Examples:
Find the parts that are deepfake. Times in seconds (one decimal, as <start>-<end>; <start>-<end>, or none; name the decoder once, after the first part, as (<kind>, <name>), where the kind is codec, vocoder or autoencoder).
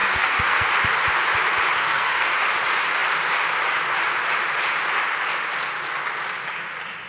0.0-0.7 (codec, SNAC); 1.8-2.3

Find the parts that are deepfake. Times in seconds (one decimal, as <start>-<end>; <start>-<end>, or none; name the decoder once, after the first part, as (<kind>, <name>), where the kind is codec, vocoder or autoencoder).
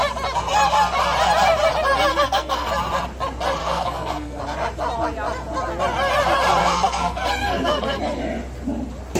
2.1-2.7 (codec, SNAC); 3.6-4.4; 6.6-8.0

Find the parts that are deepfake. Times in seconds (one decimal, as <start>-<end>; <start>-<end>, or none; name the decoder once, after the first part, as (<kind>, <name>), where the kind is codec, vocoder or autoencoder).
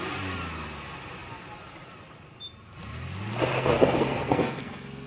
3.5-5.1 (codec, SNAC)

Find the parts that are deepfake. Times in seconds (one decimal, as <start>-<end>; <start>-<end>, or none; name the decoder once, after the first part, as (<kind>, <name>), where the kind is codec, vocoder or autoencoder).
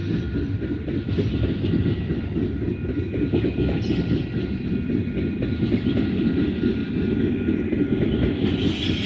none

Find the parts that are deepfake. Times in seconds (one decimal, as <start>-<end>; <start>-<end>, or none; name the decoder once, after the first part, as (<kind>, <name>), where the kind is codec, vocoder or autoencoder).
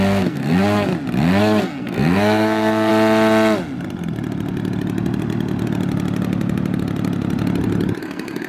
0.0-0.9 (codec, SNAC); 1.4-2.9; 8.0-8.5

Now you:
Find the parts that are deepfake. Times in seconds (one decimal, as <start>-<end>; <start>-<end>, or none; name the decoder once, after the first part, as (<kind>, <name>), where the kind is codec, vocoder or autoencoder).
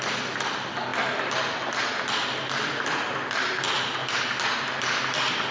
none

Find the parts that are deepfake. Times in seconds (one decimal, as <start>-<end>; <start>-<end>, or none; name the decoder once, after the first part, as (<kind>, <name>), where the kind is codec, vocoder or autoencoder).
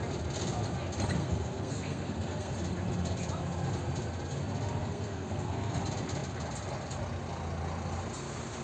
1.2-2.5 (codec, SNAC); 4.8-5.8